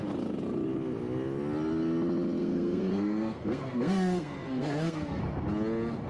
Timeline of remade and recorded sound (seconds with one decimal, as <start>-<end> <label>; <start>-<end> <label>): 0.0-2.4 recorded; 2.4-5.2 remade; 5.2-6.1 recorded

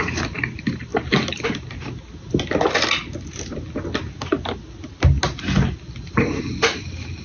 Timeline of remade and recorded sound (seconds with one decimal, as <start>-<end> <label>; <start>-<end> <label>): 0.0-7.2 recorded

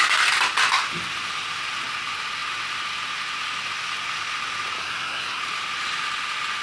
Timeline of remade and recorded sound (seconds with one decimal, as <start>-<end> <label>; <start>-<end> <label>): 0.0-4.8 recorded; 4.8-5.4 remade; 5.4-6.6 recorded

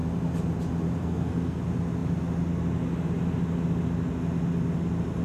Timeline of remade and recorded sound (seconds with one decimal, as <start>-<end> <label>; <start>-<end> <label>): 0.0-1.0 recorded; 1.0-1.6 remade; 1.6-5.2 recorded

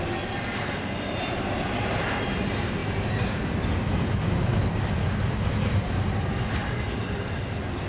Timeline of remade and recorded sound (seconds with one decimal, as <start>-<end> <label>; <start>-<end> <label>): 0.0-7.9 recorded

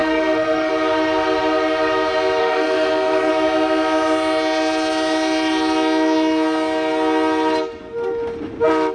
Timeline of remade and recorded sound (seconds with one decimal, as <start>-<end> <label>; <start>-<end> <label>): 0.0-0.7 remade; 0.7-2.4 recorded; 2.4-3.3 remade; 3.3-8.9 recorded